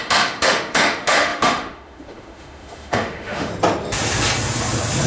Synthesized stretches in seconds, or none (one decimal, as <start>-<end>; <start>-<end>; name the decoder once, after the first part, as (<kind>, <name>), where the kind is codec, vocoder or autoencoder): 0.0-3.5 (autoencoder, DAC-VAE)